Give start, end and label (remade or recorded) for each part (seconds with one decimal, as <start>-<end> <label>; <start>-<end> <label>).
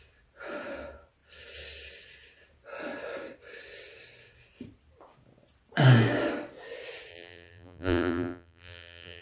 0.0-7.1 recorded; 7.1-9.2 remade